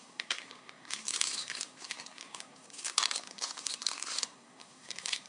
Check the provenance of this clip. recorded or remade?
remade